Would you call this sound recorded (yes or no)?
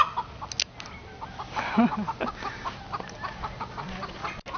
yes